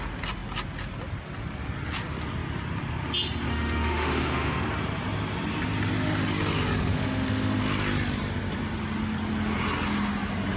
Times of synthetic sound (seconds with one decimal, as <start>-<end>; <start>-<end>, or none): 3.5-4.6; 6.9-7.6